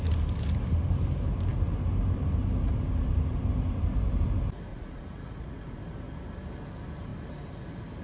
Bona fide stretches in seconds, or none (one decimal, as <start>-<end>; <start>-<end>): 0.0-4.7; 5.8-8.0